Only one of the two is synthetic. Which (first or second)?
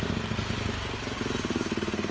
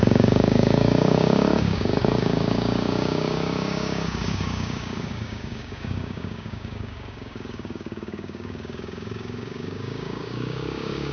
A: second